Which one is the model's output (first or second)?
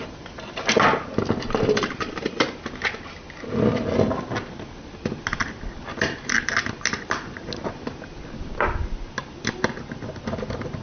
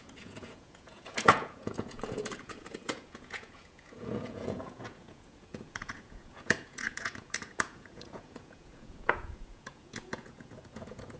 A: second